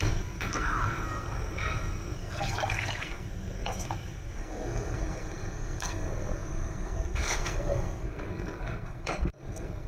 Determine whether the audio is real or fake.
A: fake